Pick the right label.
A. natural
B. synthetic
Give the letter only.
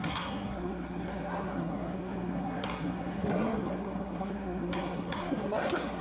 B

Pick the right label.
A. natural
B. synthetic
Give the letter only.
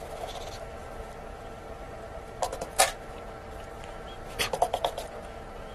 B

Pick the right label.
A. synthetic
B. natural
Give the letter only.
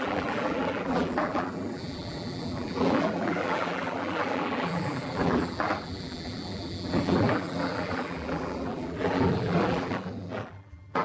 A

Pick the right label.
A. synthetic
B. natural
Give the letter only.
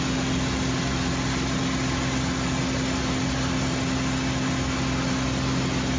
B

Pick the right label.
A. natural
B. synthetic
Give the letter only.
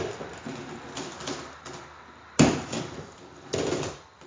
A